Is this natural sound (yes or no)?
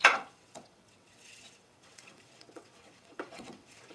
no